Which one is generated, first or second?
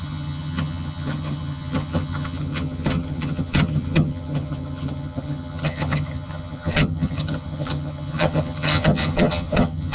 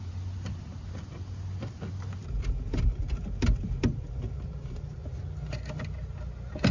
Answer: first